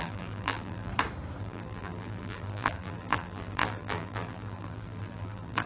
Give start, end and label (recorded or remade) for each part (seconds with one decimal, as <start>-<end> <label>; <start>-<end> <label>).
0.0-0.9 remade; 0.9-1.4 recorded; 1.4-5.7 remade